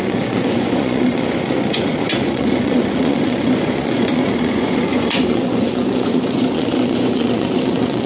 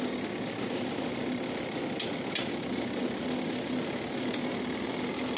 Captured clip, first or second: second